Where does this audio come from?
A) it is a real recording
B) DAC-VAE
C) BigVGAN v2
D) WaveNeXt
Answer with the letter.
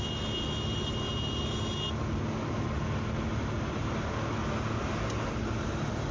A